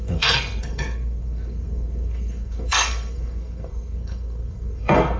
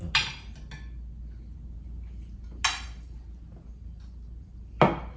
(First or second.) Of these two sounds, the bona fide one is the second